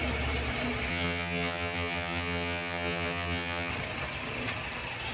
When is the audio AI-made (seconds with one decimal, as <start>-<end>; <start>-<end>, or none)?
0.9-3.7

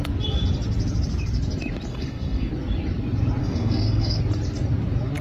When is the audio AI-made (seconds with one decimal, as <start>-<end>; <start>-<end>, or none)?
1.9-2.5; 3.4-4.2

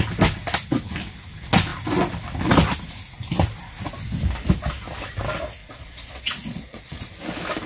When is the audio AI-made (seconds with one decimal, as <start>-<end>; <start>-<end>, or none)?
5.6-7.1

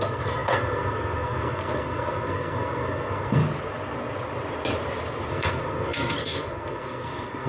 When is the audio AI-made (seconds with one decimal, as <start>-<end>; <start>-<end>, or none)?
0.0-3.4; 5.3-7.5

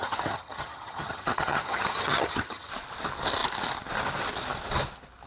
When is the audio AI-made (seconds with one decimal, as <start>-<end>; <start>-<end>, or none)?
0.0-2.7